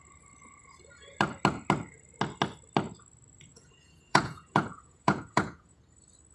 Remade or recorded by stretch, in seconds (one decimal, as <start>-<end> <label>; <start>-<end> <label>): 0.0-3.5 recorded; 3.5-5.8 remade; 5.8-6.3 recorded